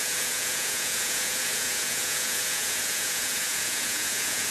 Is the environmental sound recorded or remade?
remade